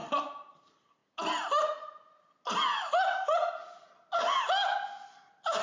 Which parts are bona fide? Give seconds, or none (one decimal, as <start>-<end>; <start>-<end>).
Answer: 0.0-5.6